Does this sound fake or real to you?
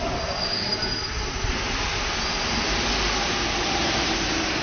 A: real